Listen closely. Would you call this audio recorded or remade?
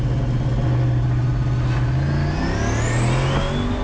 recorded